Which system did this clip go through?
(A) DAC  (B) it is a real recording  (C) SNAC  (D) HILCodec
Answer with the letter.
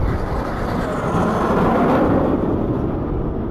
B